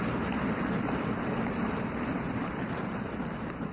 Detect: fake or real fake